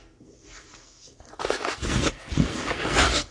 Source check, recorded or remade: remade